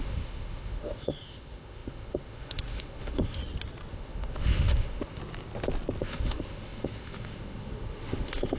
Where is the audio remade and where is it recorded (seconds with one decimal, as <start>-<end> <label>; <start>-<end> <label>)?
0.0-3.4 remade; 3.4-3.9 recorded; 3.9-5.2 remade; 5.2-6.0 recorded; 6.0-8.6 remade

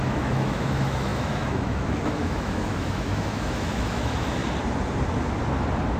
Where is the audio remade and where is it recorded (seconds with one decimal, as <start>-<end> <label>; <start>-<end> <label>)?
0.0-4.4 remade; 4.4-6.0 recorded

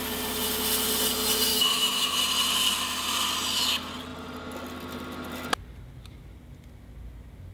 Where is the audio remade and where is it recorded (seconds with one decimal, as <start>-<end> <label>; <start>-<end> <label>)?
0.0-1.5 recorded; 1.5-2.2 remade; 2.2-7.5 recorded